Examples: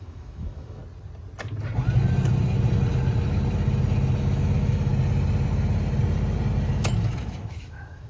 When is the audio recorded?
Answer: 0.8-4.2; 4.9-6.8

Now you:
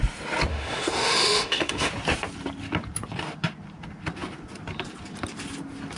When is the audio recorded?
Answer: 0.0-0.5; 1.9-6.0